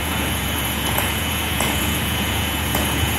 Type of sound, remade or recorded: remade